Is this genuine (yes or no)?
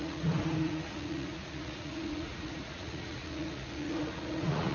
no